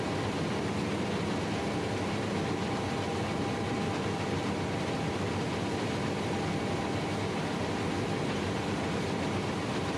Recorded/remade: recorded